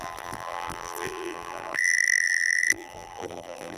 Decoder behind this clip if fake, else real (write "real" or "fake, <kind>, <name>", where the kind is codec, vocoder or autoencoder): fake, vocoder, BigVGAN v2